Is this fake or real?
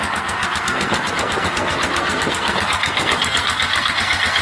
fake